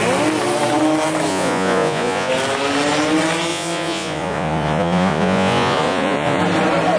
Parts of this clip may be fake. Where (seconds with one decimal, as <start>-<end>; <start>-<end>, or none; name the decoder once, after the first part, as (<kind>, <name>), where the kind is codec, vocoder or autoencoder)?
1.3-2.3 (vocoder, Vocos); 3.5-6.4